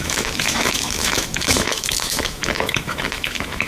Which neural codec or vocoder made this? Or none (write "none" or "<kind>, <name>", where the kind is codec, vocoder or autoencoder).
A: autoencoder, DAC-VAE